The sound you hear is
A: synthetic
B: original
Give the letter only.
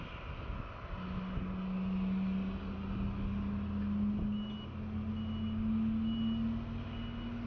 B